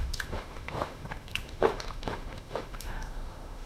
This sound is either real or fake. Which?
fake